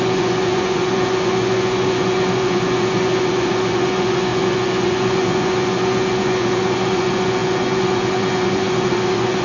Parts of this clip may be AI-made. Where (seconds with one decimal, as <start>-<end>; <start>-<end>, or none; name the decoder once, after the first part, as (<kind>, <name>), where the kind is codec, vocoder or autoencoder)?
0.0-9.4 (vocoder, Vocos)